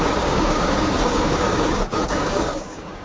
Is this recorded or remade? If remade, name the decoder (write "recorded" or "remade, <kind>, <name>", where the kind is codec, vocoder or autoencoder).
remade, codec, DAC